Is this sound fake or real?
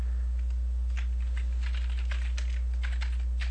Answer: real